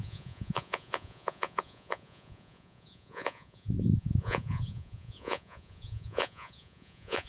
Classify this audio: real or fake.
fake